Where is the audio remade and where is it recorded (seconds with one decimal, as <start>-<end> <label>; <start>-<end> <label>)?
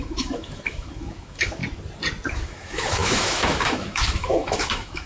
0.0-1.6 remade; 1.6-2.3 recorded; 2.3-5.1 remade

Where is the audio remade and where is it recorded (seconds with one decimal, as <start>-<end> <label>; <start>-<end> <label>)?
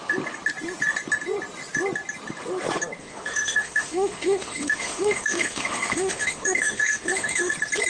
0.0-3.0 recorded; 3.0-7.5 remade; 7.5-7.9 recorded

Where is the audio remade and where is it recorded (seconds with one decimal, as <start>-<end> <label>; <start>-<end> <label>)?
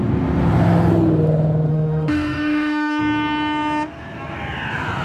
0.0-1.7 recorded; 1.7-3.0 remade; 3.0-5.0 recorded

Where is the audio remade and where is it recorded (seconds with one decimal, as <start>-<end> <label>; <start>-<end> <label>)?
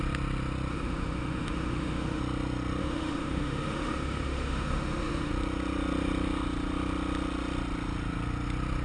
0.0-0.7 recorded; 0.7-2.2 remade; 2.2-2.8 recorded; 2.8-5.3 remade; 5.3-8.8 recorded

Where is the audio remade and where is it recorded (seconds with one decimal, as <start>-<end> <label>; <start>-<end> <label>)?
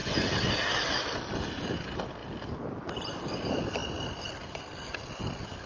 0.0-5.7 recorded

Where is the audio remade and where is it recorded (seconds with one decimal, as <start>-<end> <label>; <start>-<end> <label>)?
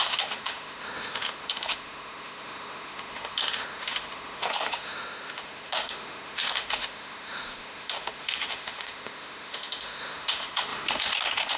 0.0-11.6 remade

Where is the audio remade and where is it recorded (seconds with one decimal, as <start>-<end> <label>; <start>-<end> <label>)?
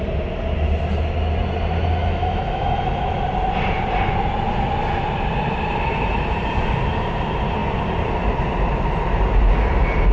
0.0-2.0 recorded; 2.0-3.2 remade; 3.2-10.1 recorded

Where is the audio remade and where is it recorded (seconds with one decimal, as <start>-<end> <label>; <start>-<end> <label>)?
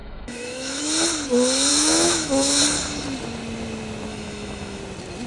0.0-0.8 remade; 0.8-1.7 recorded; 1.7-2.6 remade; 2.6-4.1 recorded; 4.1-4.8 remade; 4.8-5.3 recorded